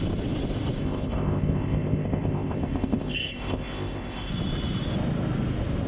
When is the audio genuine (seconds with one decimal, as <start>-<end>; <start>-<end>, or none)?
0.0-0.8; 4.3-5.9

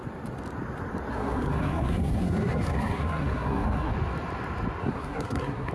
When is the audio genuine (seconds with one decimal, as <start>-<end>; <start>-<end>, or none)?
0.0-1.1; 3.9-4.8